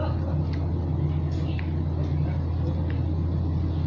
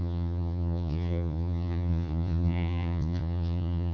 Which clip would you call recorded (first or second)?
first